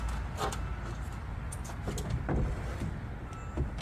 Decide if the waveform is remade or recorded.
recorded